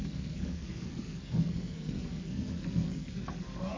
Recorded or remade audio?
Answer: remade